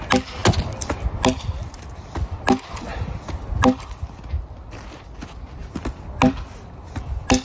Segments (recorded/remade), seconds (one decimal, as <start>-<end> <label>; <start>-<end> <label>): 0.0-7.4 recorded